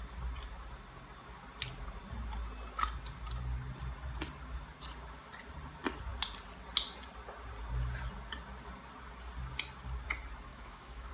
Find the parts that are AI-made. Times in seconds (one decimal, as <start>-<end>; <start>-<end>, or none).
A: 10.5-11.1